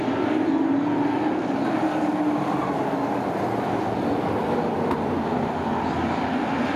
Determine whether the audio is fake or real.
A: real